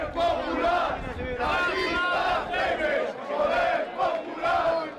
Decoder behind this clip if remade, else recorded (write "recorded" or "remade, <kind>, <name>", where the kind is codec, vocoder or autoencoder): recorded